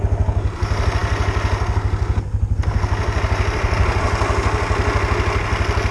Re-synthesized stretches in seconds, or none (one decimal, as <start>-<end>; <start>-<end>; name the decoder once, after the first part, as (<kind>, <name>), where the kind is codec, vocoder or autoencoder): none